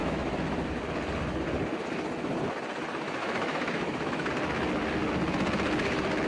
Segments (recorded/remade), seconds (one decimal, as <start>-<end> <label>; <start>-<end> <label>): 0.0-0.7 remade; 0.7-3.2 recorded; 3.2-4.3 remade; 4.3-6.3 recorded

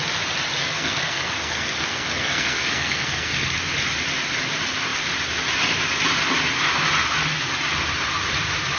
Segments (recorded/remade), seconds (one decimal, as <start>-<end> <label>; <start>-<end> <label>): 0.0-0.6 recorded; 0.6-3.6 remade; 3.6-8.8 recorded

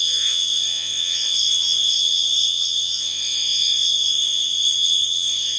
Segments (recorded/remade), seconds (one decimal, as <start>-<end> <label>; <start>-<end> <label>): 0.0-5.6 remade

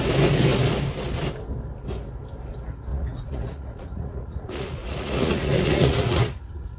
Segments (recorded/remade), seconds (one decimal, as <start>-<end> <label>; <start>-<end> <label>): 0.0-2.9 recorded; 2.9-6.8 remade

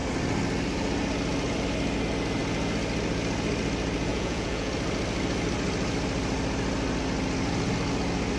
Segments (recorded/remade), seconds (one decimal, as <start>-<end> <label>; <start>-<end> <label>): 0.0-4.1 recorded; 4.1-4.7 remade; 4.7-8.4 recorded

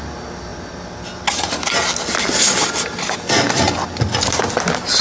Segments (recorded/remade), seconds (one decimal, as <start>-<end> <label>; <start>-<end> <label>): 0.0-5.0 recorded

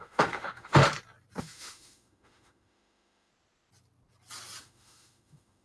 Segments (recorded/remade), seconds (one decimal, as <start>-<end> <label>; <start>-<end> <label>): 0.0-0.8 remade; 0.8-1.4 recorded; 1.4-3.3 remade; 3.3-4.6 recorded; 4.6-5.6 remade